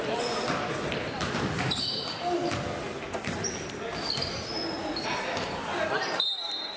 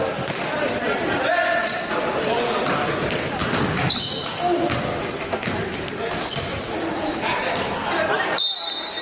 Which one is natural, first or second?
first